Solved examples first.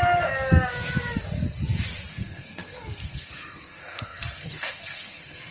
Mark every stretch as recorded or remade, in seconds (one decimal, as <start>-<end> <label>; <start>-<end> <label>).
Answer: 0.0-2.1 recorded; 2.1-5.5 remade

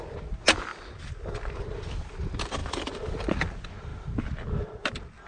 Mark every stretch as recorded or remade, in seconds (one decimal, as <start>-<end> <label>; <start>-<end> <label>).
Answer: 0.0-2.6 recorded; 2.6-3.1 remade; 3.1-5.3 recorded

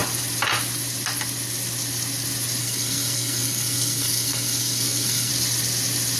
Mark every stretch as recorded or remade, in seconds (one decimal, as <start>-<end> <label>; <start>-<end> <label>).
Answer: 0.0-2.6 recorded; 2.6-5.3 remade; 5.3-6.2 recorded

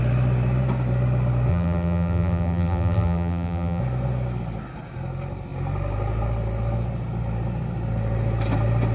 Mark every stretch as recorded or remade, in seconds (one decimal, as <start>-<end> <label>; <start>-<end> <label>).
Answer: 0.0-1.5 recorded; 1.5-3.8 remade; 3.8-8.9 recorded

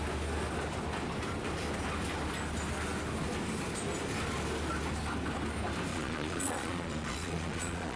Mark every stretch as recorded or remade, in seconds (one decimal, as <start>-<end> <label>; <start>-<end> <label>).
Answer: 0.0-5.9 recorded; 5.9-8.0 remade

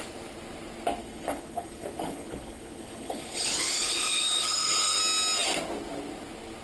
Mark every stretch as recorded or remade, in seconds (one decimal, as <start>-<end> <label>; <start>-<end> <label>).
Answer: 0.0-1.0 recorded; 1.0-5.0 remade; 5.0-6.6 recorded

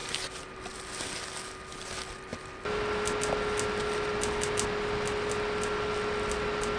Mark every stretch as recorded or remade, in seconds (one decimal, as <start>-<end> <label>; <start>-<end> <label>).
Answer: 0.0-6.8 recorded

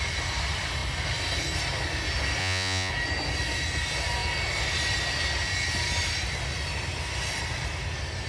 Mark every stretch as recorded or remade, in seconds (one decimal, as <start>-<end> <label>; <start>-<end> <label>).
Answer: 0.0-2.4 recorded; 2.4-2.9 remade; 2.9-8.3 recorded